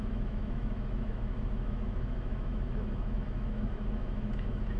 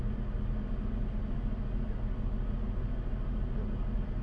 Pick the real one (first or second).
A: second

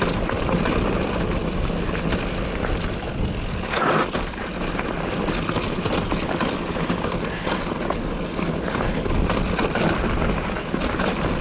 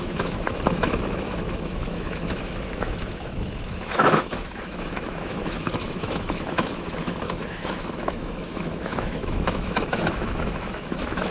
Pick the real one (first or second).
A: first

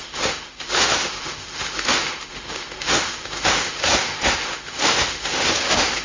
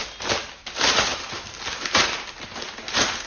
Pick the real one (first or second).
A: second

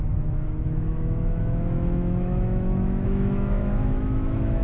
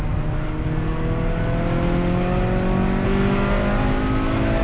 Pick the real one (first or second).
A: second